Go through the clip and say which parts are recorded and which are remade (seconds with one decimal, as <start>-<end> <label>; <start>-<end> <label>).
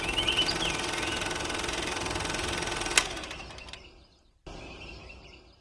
0.0-5.6 recorded